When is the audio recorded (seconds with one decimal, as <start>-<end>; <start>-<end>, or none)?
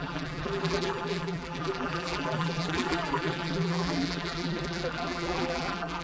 none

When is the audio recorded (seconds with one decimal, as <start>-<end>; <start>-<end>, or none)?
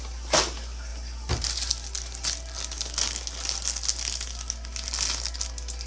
0.0-5.9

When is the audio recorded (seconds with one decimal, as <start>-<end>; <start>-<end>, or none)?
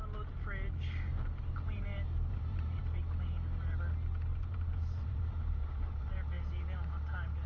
0.0-1.1; 2.8-4.3; 6.1-7.5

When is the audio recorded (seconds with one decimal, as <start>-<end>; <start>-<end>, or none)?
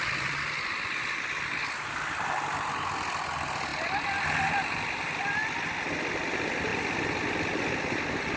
0.0-8.4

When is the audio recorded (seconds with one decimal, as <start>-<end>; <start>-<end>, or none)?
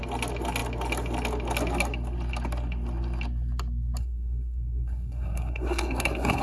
0.0-4.0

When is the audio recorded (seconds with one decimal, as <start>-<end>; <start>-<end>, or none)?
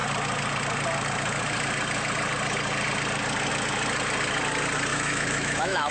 0.0-4.9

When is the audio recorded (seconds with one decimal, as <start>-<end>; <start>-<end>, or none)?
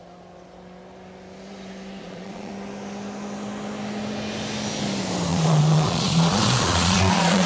0.0-2.0; 2.5-5.3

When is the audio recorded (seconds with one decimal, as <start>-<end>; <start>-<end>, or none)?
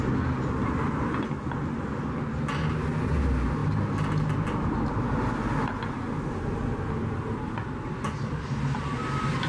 0.0-9.5